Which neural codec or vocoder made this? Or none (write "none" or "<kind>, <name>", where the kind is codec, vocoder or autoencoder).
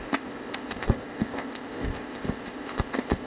codec, ZipCodec